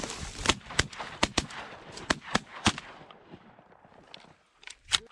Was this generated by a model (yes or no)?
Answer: no